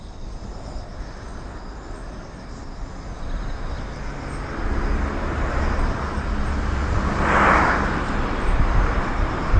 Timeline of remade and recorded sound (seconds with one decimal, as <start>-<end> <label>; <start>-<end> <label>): 0.0-6.8 recorded; 6.8-8.0 remade; 8.0-9.6 recorded